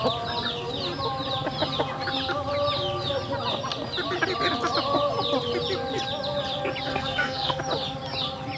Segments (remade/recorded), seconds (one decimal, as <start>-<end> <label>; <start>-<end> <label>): 0.0-6.9 recorded; 6.9-7.6 remade; 7.6-8.6 recorded